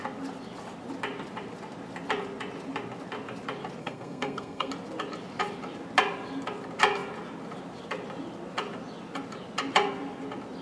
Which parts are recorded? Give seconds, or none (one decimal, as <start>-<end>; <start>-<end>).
0.0-3.8; 4.7-10.6